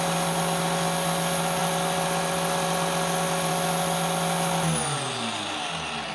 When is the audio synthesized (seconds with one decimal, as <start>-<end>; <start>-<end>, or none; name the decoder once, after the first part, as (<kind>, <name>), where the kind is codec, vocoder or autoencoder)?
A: 1.6-3.5 (vocoder, BigVGAN v2)